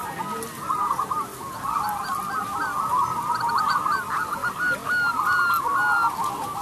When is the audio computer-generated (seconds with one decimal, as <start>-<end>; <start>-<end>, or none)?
none